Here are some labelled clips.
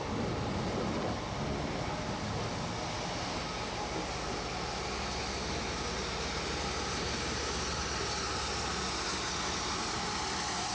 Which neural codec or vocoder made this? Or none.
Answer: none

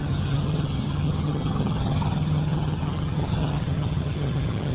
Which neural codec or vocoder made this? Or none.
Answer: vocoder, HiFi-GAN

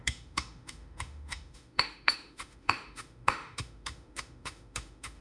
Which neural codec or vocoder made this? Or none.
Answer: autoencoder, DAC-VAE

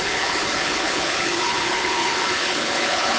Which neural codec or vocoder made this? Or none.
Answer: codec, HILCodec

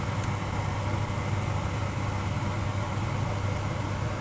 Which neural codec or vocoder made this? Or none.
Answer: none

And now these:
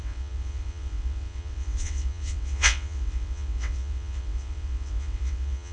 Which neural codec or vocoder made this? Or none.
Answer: vocoder, WaveNeXt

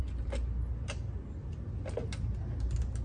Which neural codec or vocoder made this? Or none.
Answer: none